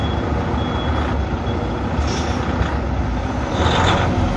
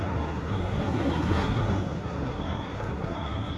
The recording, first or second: first